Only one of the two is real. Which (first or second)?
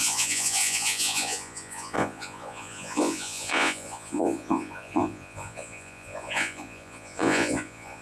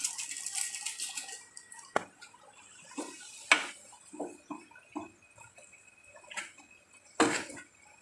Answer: second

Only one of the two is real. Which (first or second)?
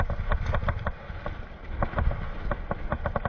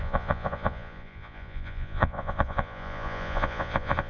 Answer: first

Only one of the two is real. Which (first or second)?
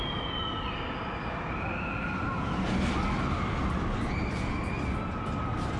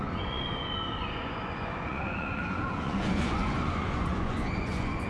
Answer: first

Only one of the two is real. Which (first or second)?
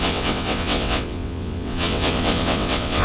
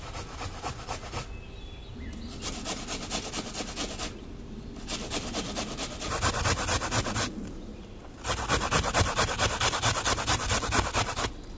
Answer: second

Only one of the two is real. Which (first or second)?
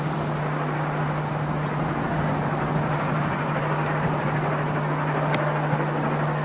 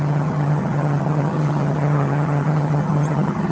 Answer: first